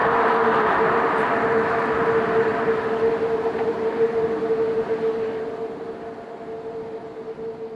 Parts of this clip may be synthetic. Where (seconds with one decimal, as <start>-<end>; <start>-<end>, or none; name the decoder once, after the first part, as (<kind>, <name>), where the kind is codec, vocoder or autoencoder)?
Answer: 0.0-1.7 (vocoder, BigVGAN v2)